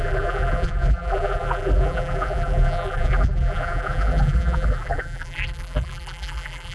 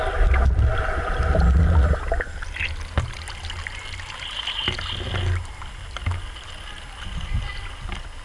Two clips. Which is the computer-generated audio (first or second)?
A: first